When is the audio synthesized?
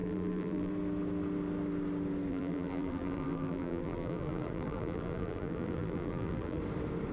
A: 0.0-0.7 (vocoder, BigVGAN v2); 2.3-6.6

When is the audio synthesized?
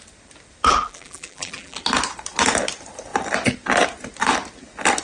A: 0.7-1.8 (vocoder, BigVGAN v2)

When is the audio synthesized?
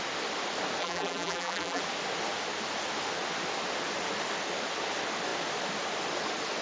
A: 0.8-1.8 (vocoder, BigVGAN v2)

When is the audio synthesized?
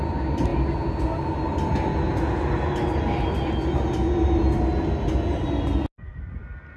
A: none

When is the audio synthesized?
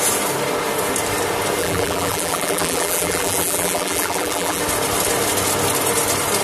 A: 1.6-4.6 (vocoder, BigVGAN v2)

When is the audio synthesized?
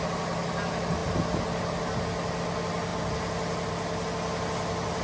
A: none